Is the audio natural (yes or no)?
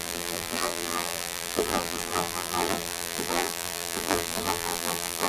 no